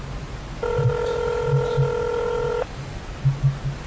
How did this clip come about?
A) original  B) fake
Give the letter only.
A